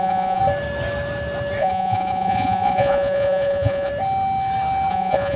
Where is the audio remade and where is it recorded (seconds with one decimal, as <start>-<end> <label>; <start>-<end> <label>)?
0.0-0.4 remade; 0.4-1.6 recorded; 1.6-3.9 remade; 3.9-4.9 recorded; 4.9-5.4 remade